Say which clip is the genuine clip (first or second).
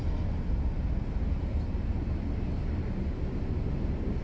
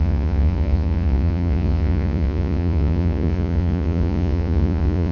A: first